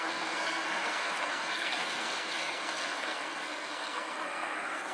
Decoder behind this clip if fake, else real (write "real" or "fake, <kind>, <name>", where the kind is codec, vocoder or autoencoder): fake, codec, SNAC